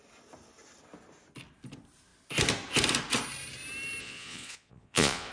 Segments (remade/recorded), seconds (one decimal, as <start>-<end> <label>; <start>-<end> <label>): 0.0-4.0 recorded; 4.0-5.3 remade